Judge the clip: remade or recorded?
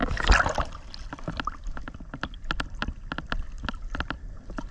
recorded